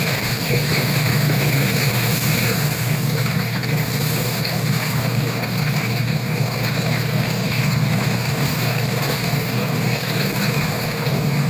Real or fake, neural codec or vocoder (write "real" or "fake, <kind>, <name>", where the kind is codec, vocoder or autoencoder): fake, codec, DAC